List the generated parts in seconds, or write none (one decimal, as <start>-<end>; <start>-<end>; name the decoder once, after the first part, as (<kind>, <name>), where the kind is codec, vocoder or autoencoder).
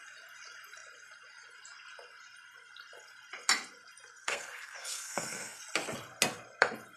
4.2-5.6 (codec, SNAC)